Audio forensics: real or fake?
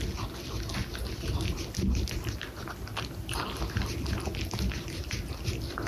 real